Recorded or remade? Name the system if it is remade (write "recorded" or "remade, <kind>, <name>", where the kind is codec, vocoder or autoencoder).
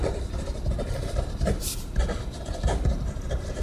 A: recorded